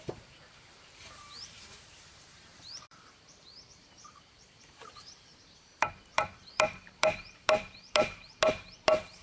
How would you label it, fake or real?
fake